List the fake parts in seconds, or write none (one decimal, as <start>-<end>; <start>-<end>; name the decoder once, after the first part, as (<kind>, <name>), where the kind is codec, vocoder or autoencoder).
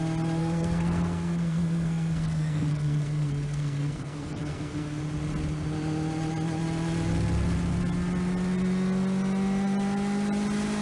0.4-5.0 (codec, SNAC)